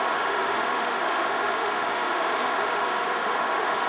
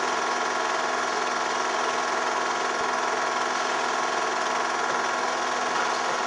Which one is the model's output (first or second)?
first